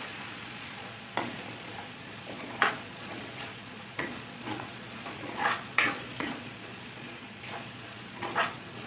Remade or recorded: remade